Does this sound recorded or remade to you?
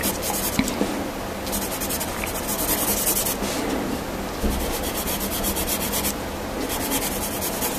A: recorded